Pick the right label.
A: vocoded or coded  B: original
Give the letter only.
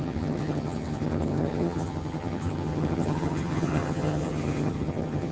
A